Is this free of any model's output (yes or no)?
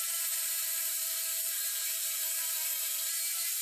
no